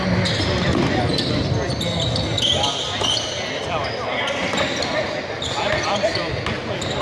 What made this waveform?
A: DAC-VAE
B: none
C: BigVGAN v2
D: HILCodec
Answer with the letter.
B